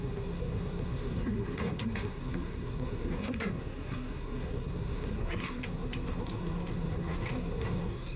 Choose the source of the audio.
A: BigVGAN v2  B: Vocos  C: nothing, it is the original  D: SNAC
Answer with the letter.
D